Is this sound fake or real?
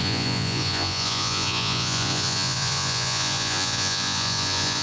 fake